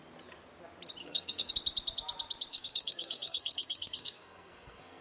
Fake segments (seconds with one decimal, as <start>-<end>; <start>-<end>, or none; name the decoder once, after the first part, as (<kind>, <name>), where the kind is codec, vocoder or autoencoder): 1.0-1.5 (codec, SNAC); 2.5-5.0